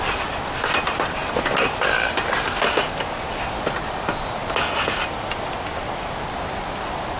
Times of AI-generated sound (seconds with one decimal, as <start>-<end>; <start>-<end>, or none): 1.2-3.6; 4.4-6.2